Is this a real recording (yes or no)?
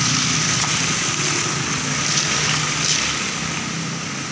yes